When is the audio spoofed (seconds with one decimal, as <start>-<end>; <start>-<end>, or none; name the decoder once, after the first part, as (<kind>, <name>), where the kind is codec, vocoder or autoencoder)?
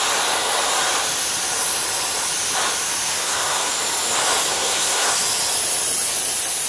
3.1-3.7 (codec, SNAC); 4.5-5.1